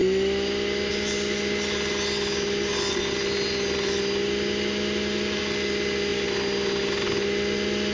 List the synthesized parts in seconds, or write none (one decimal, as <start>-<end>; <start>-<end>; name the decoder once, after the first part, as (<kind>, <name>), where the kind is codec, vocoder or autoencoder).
none